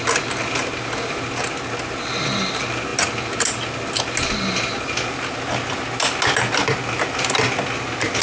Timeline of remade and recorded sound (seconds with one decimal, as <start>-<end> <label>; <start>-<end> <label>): 0.0-8.2 recorded